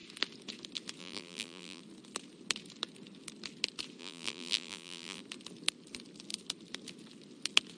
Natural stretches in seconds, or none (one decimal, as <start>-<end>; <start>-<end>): 0.0-1.0; 1.8-4.0; 5.2-7.8